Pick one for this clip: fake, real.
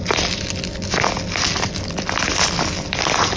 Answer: real